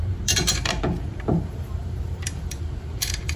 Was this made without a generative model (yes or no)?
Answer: no